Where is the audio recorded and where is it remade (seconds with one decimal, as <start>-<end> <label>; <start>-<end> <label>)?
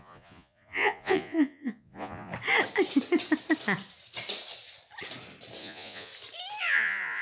0.0-2.3 remade; 2.3-5.6 recorded; 5.6-6.1 remade; 6.1-6.6 recorded; 6.6-7.2 remade